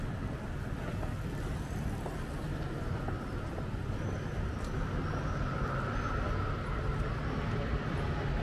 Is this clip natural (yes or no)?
yes